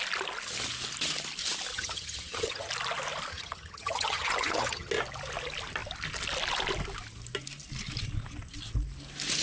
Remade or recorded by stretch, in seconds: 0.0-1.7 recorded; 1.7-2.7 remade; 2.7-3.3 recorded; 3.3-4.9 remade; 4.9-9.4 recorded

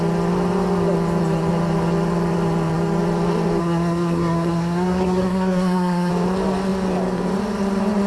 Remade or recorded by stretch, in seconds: 0.0-3.6 recorded; 3.6-6.1 remade; 6.1-8.1 recorded

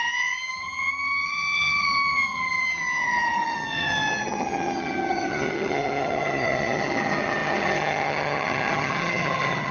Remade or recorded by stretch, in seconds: 0.0-9.7 remade